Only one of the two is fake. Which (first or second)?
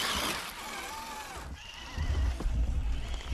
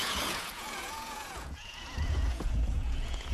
second